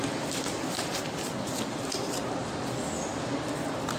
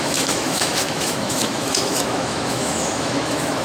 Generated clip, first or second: second